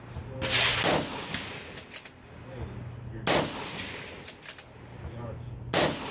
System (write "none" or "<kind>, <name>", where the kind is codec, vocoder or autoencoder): none